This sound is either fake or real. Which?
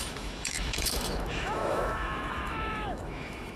fake